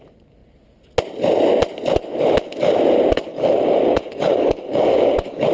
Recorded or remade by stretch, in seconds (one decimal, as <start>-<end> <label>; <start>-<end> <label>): 0.0-3.3 recorded; 3.3-5.5 remade

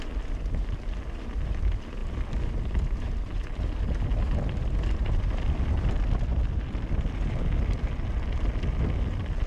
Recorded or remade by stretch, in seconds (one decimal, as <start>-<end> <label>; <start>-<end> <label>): 0.0-9.5 recorded

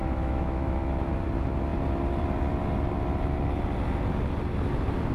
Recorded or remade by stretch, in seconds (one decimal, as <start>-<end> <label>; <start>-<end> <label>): 0.0-1.1 remade; 1.1-5.1 recorded

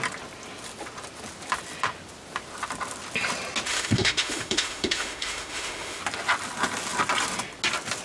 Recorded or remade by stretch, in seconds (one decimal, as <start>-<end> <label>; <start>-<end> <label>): 0.0-3.7 recorded; 3.7-6.0 remade; 6.0-8.0 recorded

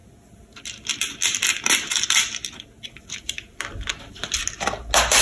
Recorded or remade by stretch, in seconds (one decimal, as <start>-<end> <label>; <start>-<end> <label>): 0.0-3.1 recorded; 3.1-4.2 remade; 4.2-5.2 recorded